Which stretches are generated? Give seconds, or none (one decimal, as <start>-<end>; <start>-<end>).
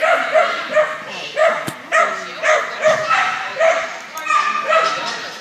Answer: none